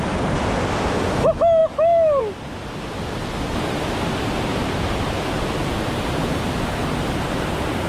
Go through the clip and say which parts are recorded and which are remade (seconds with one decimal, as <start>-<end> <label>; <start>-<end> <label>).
0.0-7.9 recorded